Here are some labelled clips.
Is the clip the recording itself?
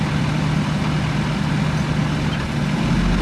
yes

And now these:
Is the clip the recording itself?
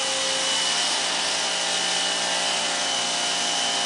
yes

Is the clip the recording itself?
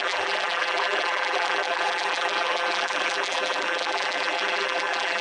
no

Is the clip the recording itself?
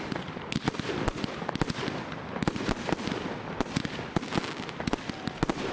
yes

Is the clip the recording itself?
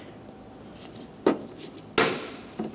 yes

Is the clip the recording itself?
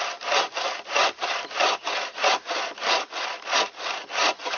yes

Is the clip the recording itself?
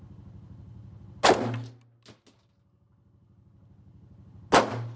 yes